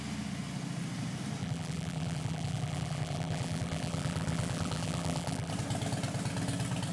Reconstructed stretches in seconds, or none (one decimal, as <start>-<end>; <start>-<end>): 1.4-5.5